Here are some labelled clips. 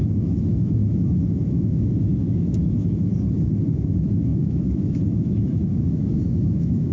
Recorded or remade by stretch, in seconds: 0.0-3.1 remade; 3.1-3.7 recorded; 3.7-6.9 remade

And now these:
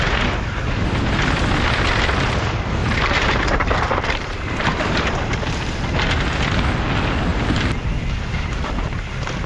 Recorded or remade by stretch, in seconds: 0.0-2.8 recorded; 2.8-5.8 remade; 5.8-7.3 recorded; 7.3-8.1 remade; 8.1-9.5 recorded

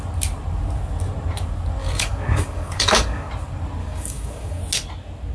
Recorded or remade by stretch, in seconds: 0.0-1.8 recorded; 1.8-3.3 remade; 3.3-3.8 recorded; 3.8-4.6 remade; 4.6-5.3 recorded

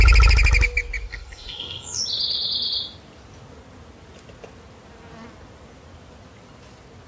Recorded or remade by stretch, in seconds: 0.0-1.1 recorded; 1.1-2.0 remade; 2.0-7.1 recorded